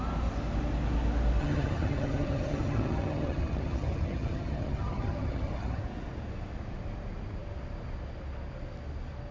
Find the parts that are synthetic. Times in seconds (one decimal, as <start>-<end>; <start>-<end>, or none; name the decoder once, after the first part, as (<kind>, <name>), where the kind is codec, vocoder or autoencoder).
1.4-5.8 (vocoder, HiFi-GAN)